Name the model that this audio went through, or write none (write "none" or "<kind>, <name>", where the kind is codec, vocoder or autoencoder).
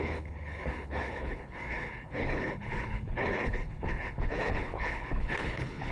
codec, HILCodec